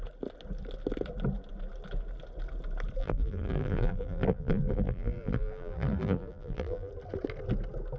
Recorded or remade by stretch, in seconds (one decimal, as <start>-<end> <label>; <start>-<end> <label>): 0.0-3.0 recorded; 3.0-6.9 remade; 6.9-8.0 recorded